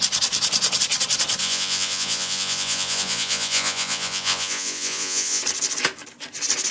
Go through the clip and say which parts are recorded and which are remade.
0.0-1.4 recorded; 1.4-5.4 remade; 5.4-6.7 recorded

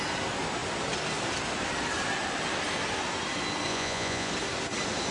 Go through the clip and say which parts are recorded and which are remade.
0.0-3.7 recorded; 3.7-4.3 remade; 4.3-5.1 recorded

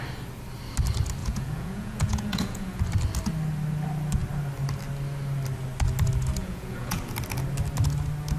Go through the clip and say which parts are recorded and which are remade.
0.0-1.2 recorded; 1.2-2.8 remade; 2.8-6.4 recorded; 6.4-7.0 remade; 7.0-8.4 recorded

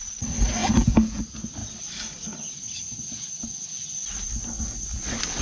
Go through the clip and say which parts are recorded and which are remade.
0.0-0.6 recorded; 0.6-1.2 remade; 1.2-5.4 recorded

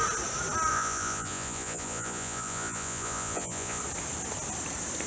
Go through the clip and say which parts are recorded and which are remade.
0.0-0.7 recorded; 0.7-3.8 remade; 3.8-5.1 recorded

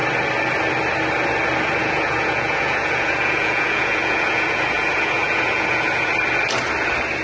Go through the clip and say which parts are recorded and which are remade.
0.0-1.8 recorded; 1.8-6.1 remade; 6.1-7.2 recorded

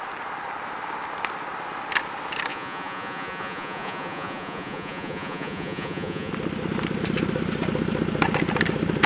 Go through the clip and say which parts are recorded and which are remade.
0.0-2.5 recorded; 2.5-6.3 remade; 6.3-9.1 recorded

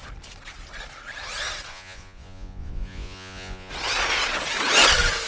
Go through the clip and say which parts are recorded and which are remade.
0.0-1.7 recorded; 1.7-3.7 remade; 3.7-5.3 recorded